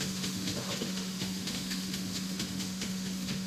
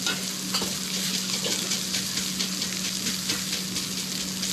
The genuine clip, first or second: second